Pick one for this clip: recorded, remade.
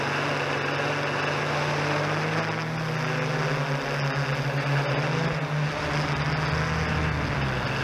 recorded